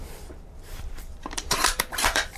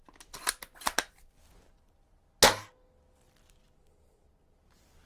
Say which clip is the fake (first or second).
first